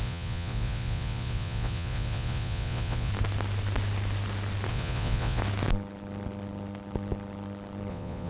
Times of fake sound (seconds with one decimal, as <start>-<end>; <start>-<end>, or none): 0.0-3.1; 4.7-5.4; 7.9-8.3